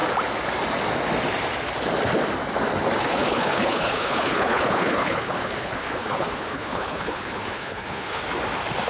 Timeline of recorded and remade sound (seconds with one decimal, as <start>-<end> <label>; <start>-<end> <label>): 0.0-3.0 recorded; 3.0-8.2 remade; 8.2-8.9 recorded